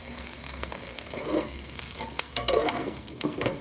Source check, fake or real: fake